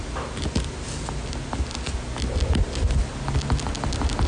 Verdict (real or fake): real